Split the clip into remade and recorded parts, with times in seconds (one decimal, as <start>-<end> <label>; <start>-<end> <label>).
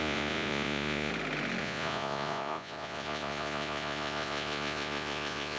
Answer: 0.0-1.1 remade; 1.1-1.6 recorded; 1.6-5.6 remade